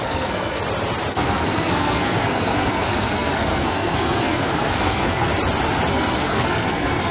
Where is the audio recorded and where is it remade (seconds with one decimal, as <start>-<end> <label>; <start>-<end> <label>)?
0.0-0.6 remade; 0.6-1.1 recorded; 1.1-5.3 remade; 5.3-5.9 recorded; 5.9-7.1 remade